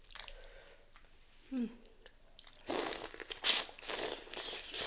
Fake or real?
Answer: real